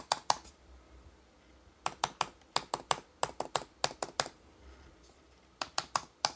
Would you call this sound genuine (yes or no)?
yes